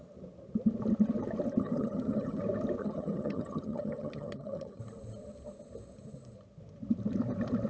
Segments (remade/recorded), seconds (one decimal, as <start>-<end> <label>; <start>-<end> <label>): 0.0-1.6 recorded; 1.6-2.4 remade; 2.4-2.8 recorded; 2.8-4.8 remade; 4.8-7.7 recorded